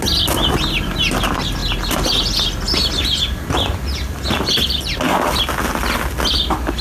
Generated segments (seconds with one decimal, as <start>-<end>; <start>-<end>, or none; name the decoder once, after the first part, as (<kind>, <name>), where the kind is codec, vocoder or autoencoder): none

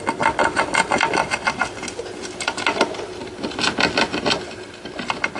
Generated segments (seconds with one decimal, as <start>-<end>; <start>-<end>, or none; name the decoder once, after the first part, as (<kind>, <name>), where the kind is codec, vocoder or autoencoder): none

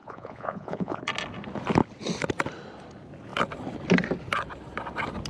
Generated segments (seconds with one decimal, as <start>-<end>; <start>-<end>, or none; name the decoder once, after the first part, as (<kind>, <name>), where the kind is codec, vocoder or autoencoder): 0.0-1.0 (vocoder, Vocos)

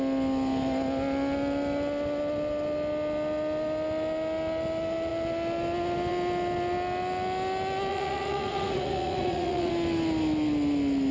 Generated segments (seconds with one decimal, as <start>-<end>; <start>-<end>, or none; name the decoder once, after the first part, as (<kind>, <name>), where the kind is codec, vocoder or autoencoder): 7.9-9.7 (vocoder, Vocos)